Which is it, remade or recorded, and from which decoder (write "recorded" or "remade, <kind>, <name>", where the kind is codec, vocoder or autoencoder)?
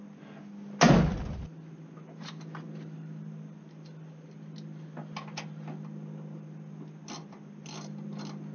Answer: recorded